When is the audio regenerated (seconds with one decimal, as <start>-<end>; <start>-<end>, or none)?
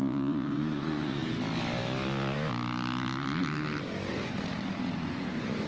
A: 0.0-1.2; 4.1-5.7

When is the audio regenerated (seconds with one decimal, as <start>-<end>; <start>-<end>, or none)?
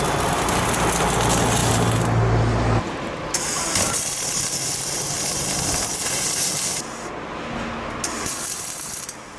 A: none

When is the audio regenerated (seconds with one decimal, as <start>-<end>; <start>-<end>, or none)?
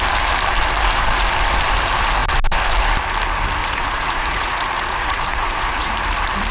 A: 3.6-5.9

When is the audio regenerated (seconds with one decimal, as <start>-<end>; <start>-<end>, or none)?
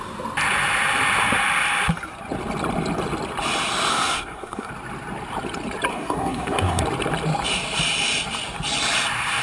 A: 3.9-4.7; 5.9-6.8